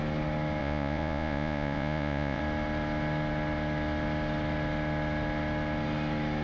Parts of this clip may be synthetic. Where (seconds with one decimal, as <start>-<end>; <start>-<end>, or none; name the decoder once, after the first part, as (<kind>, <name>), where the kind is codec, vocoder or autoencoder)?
0.6-2.4 (vocoder, Vocos)